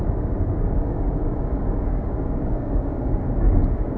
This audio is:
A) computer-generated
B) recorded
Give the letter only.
A